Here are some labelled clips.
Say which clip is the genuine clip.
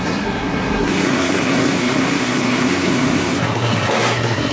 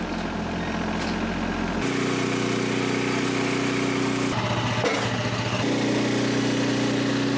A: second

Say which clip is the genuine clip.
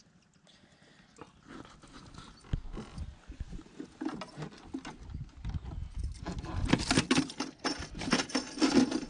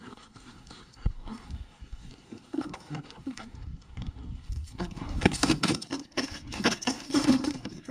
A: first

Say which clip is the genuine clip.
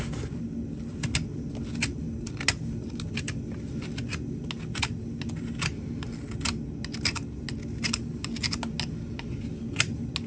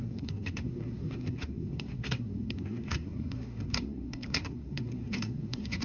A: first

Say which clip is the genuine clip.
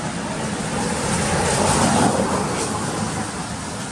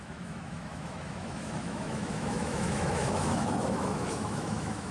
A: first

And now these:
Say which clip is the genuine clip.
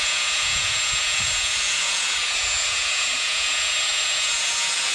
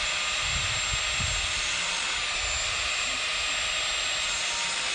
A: second